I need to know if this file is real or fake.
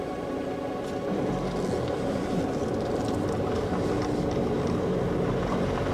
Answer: real